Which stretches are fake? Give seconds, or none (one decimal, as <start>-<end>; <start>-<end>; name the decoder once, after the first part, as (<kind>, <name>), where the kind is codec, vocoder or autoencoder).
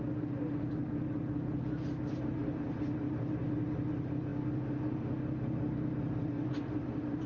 none